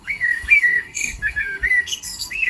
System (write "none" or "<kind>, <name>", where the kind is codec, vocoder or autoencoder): codec, SNAC